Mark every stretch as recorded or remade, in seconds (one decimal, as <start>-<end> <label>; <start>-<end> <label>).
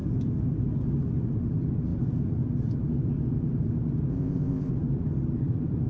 0.0-4.1 recorded; 4.1-4.7 remade; 4.7-5.9 recorded